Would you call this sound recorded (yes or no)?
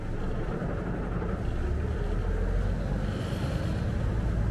yes